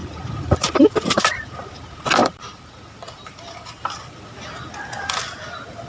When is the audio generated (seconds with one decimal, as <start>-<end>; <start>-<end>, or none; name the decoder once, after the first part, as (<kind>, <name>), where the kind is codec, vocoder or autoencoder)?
0.0-1.8 (vocoder, BigVGAN v2); 2.2-3.8